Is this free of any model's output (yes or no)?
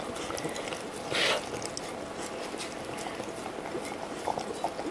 yes